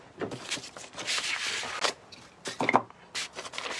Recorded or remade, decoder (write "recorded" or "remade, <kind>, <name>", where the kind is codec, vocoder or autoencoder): recorded